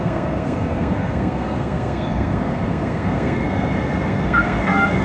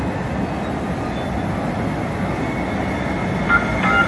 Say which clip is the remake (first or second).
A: first